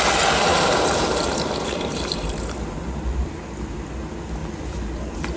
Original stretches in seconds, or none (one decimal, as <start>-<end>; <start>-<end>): 0.0-0.5; 3.2-4.4